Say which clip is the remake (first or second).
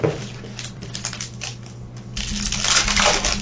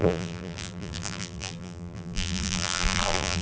second